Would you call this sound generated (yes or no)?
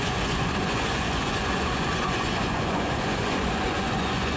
yes